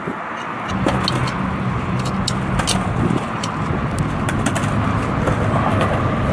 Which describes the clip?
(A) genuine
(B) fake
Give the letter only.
A